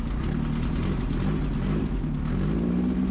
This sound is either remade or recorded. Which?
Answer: recorded